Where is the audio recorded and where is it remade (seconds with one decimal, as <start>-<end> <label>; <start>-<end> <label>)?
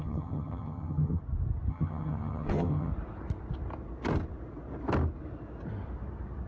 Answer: 0.0-1.2 remade; 1.2-1.7 recorded; 1.7-2.9 remade; 2.9-6.5 recorded